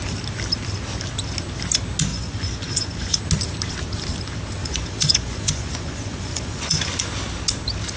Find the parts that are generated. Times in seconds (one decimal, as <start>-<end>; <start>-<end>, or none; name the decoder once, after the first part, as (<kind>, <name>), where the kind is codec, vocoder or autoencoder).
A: 2.1-3.2 (vocoder, Vocos); 4.6-6.8